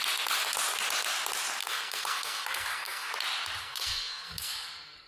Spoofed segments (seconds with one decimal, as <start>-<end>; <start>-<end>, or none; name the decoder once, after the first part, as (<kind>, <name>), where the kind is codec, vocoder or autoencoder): 1.6-3.1 (codec, SNAC); 3.6-5.1